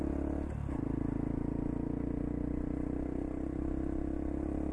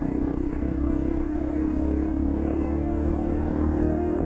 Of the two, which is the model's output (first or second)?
second